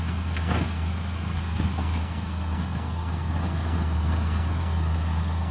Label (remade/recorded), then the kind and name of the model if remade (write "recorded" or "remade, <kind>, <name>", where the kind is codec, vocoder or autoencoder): remade, codec, SNAC